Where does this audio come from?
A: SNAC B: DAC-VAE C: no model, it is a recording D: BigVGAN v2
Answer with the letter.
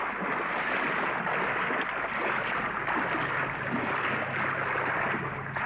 C